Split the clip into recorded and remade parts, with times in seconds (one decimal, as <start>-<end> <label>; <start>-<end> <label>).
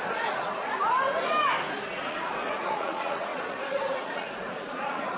0.0-0.8 remade; 0.8-1.9 recorded; 1.9-5.2 remade